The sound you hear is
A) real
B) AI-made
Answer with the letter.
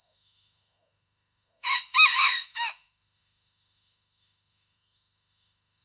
B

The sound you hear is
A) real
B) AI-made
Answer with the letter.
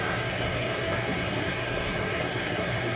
B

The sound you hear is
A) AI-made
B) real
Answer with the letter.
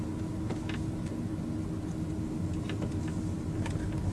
B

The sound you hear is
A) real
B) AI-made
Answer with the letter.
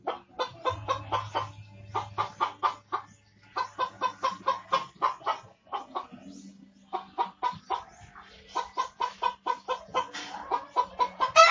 A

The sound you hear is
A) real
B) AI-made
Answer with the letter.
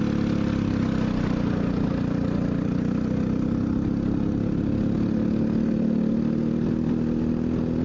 A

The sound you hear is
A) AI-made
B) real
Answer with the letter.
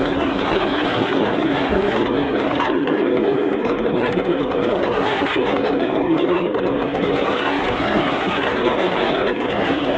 A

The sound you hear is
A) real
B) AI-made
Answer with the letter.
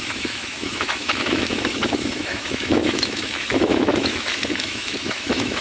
B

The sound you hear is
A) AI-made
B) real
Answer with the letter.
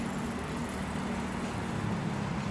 B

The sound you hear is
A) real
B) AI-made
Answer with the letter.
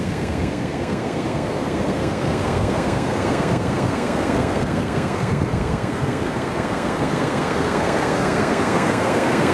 B